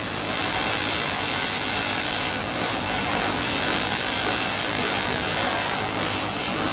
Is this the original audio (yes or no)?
no